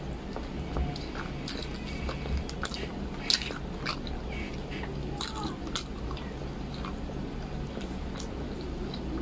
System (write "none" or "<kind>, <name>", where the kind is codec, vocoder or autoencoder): none